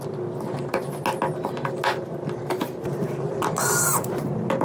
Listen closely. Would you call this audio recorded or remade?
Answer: recorded